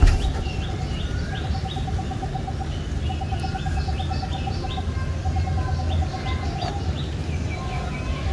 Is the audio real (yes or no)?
yes